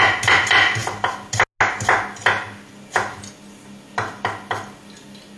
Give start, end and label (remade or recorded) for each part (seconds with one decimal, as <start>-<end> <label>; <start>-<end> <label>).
0.0-5.4 recorded